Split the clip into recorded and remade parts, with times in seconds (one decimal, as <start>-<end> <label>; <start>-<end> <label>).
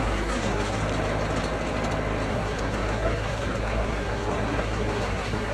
0.0-0.8 remade; 0.8-2.3 recorded; 2.3-5.5 remade